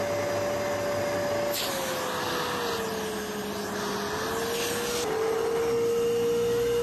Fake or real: real